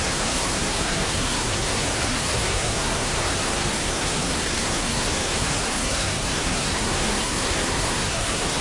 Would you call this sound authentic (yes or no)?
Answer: no